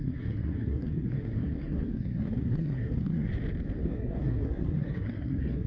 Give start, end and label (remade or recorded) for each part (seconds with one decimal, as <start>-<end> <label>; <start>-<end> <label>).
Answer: 0.0-3.3 remade; 3.3-3.8 recorded; 3.8-5.7 remade